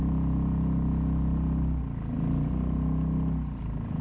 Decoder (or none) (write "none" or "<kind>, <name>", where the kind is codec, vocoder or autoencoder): none